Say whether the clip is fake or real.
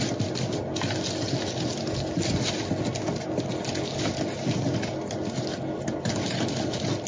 real